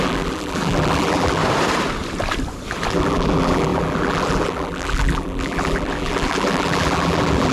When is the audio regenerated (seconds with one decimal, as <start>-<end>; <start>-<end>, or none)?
0.0-1.4; 2.9-7.5